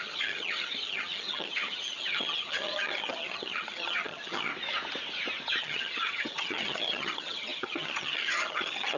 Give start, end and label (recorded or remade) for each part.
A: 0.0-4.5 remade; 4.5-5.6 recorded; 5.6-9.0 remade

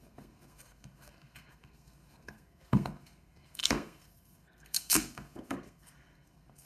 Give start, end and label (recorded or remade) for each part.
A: 0.0-6.7 remade

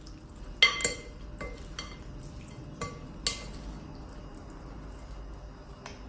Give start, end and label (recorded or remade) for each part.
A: 0.0-6.1 recorded